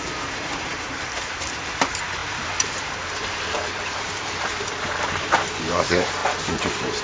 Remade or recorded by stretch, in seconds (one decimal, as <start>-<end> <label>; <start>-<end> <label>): 0.0-6.2 remade; 6.2-7.0 recorded